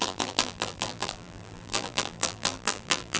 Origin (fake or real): fake